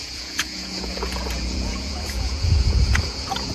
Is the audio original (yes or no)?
no